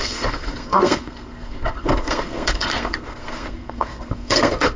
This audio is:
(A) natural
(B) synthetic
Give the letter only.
B